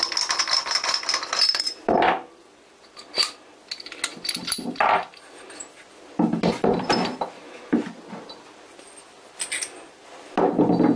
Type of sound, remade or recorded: recorded